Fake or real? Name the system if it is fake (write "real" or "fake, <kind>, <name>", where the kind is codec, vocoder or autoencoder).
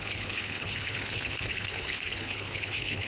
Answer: fake, codec, HILCodec